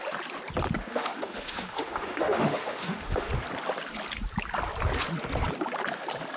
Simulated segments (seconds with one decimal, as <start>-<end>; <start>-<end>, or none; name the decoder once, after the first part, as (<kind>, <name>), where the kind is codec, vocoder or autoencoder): 0.8-3.3 (autoencoder, DAC-VAE)